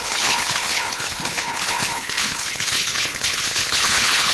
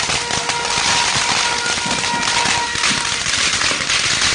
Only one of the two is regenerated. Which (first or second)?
first